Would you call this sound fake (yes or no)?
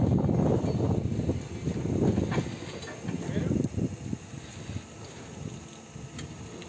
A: no